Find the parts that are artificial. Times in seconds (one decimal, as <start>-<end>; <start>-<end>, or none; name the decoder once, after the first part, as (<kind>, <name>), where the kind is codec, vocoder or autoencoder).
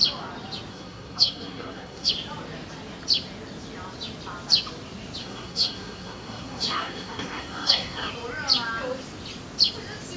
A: 0.7-2.1 (codec, SNAC); 5.2-8.1